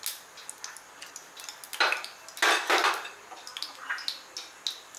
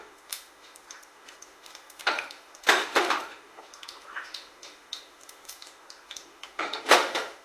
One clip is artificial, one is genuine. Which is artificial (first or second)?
second